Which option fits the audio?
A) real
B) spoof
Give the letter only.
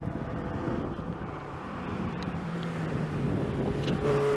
B